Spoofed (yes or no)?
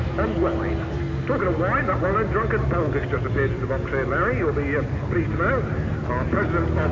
no